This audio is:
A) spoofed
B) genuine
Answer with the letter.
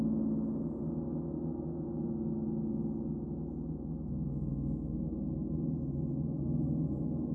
A